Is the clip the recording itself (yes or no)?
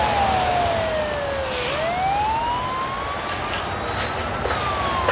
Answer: yes